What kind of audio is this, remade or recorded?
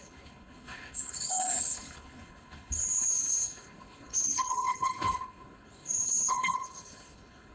remade